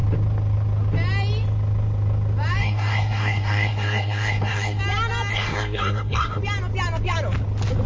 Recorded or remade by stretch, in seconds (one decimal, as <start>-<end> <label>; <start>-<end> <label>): 0.0-2.6 recorded; 2.6-4.8 remade; 4.8-5.3 recorded; 5.3-6.4 remade; 6.4-7.9 recorded